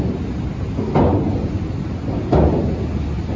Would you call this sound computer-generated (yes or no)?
no